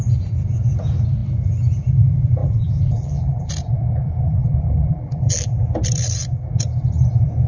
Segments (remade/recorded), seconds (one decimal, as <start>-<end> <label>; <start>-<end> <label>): 0.0-2.4 recorded; 2.4-3.5 remade; 3.5-4.4 recorded; 4.4-5.6 remade; 5.6-7.5 recorded